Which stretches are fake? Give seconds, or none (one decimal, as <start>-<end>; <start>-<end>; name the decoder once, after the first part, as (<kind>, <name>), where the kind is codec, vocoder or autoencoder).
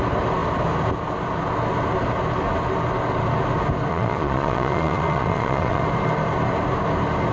3.9-5.8 (vocoder, Vocos)